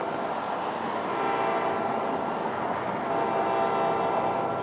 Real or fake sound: real